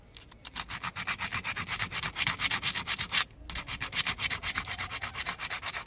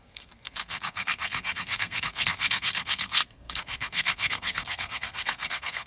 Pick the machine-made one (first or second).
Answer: second